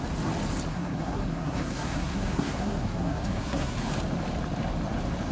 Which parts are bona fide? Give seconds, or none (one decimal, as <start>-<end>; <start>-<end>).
0.0-0.7; 3.9-5.3